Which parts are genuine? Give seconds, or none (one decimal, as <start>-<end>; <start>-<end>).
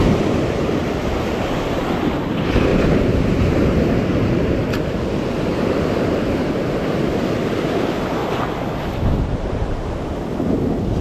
0.0-2.7; 6.7-8.2; 9.8-11.0